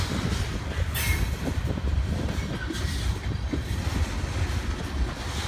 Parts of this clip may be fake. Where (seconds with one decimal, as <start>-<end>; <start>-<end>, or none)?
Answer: 1.1-4.4